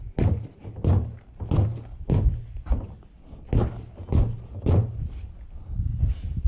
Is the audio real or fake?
real